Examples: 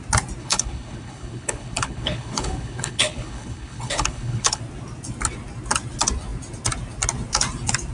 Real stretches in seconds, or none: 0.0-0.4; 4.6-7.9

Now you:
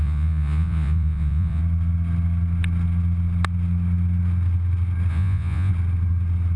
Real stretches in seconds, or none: 1.6-5.1; 5.7-6.6